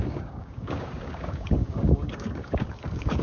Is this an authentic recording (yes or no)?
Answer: no